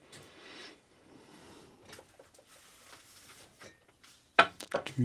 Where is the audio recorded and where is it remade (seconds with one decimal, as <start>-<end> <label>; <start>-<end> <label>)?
0.0-1.4 remade; 1.4-4.4 recorded; 4.4-5.0 remade